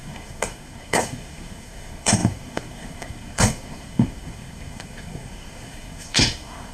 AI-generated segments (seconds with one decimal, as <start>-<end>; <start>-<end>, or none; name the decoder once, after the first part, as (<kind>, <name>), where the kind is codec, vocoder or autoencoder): 0.0-6.7 (codec, SNAC)